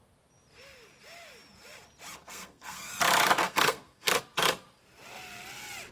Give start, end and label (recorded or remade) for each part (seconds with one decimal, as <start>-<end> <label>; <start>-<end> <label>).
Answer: 0.0-2.2 recorded; 2.2-2.9 remade; 2.9-3.4 recorded; 3.4-4.2 remade; 4.2-5.9 recorded

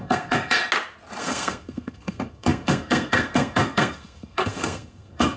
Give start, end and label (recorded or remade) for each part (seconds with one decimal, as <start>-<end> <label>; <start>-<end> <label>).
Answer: 0.0-0.6 remade; 0.6-1.2 recorded; 1.2-5.4 remade